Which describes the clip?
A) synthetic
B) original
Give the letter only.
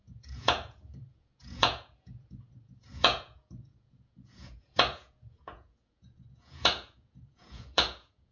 A